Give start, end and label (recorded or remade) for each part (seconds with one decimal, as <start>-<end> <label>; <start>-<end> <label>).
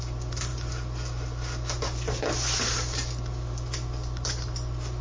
0.0-5.0 recorded